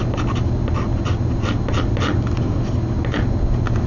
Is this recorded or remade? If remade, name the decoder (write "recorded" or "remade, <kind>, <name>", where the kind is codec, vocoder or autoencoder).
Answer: recorded